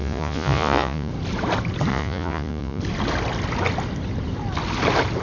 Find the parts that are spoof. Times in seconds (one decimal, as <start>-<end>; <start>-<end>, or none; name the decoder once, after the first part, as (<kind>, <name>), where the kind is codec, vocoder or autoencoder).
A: 0.0-1.1 (vocoder, Vocos); 1.9-2.8